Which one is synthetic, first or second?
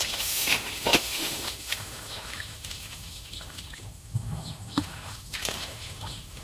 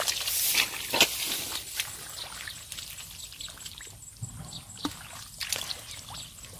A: first